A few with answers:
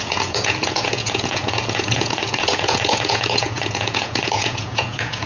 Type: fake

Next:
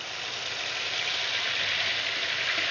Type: real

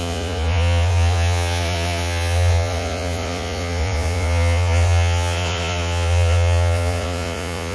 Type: fake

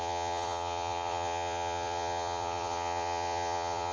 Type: fake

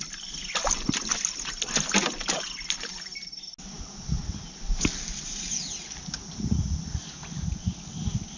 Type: real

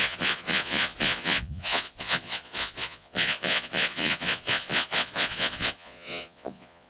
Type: fake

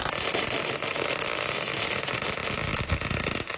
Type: real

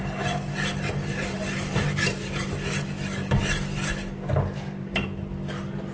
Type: real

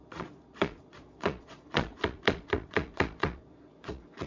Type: fake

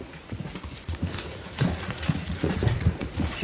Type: fake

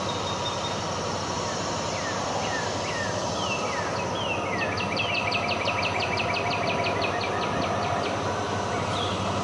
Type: real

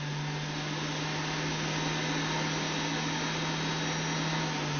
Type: real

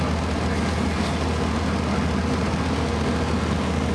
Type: real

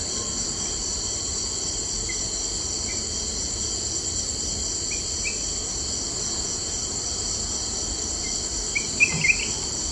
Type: real